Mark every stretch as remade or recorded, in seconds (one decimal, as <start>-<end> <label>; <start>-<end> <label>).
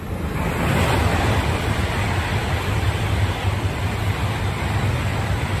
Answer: 0.0-1.1 recorded; 1.1-4.5 remade; 4.5-5.1 recorded; 5.1-5.6 remade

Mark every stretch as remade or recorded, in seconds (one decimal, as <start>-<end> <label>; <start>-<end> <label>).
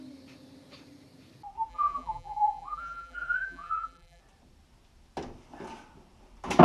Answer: 0.0-1.7 recorded; 1.7-4.2 remade; 4.2-6.6 recorded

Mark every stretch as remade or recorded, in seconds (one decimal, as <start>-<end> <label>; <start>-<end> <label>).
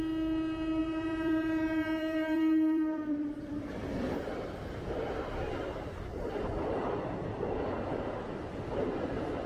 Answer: 0.0-0.8 recorded; 0.8-5.4 remade; 5.4-6.1 recorded; 6.1-6.7 remade; 6.7-9.5 recorded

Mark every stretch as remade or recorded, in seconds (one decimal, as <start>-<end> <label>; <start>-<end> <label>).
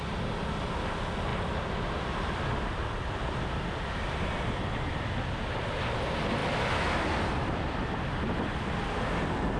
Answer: 0.0-1.3 recorded; 1.3-4.9 remade; 4.9-6.4 recorded; 6.4-8.8 remade; 8.8-9.6 recorded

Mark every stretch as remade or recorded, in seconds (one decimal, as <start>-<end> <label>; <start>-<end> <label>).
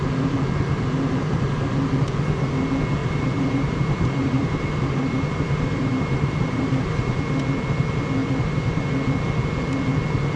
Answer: 0.0-3.0 recorded; 3.0-7.2 remade; 7.2-8.2 recorded; 8.2-8.8 remade; 8.8-10.4 recorded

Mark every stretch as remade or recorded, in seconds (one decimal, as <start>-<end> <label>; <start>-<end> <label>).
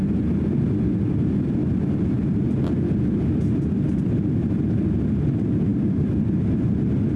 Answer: 0.0-5.7 recorded; 5.7-6.2 remade; 6.2-7.2 recorded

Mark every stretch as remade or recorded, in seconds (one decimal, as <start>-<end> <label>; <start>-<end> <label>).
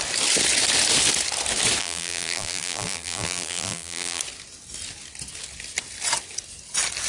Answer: 0.0-1.8 recorded; 1.8-4.2 remade; 4.2-7.1 recorded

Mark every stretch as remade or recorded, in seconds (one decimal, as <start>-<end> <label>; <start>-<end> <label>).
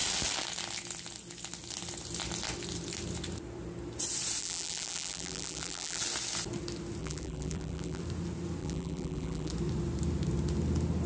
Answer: 0.0-4.4 recorded; 4.4-6.0 remade; 6.0-7.0 recorded; 7.0-8.0 remade; 8.0-8.6 recorded; 8.6-9.5 remade; 9.5-11.1 recorded